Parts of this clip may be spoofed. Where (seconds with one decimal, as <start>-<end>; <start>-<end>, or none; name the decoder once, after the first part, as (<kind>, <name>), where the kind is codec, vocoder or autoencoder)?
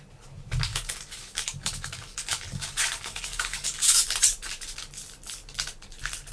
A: 0.7-4.0 (codec, DAC)